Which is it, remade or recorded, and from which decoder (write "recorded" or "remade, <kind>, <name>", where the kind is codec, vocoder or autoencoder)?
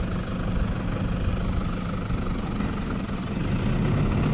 recorded